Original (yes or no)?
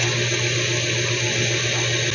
yes